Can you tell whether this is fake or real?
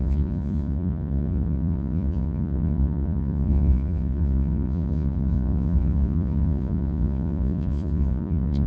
fake